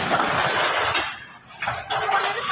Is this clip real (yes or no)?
yes